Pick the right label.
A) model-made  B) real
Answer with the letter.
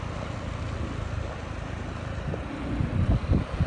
B